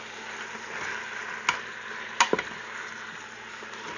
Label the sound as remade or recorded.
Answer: recorded